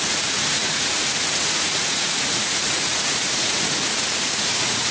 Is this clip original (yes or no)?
no